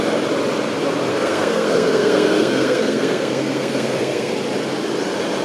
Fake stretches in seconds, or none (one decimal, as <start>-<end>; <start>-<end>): 1.1-4.3